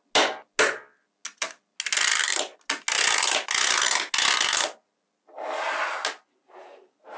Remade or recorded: recorded